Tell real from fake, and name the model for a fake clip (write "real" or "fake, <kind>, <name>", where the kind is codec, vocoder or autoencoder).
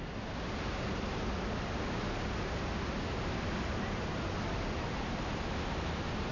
real